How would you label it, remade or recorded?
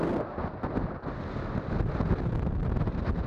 recorded